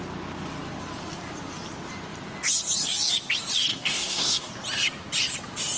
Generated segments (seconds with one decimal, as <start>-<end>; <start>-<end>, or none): 3.7-4.5